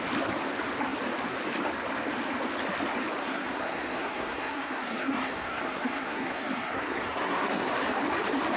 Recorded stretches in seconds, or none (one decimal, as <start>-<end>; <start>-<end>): 0.0-3.2; 7.7-8.6